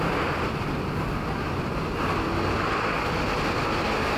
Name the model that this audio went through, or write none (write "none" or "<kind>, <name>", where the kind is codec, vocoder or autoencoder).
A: none